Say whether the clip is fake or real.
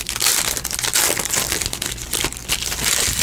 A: real